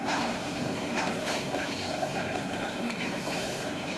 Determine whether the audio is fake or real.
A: fake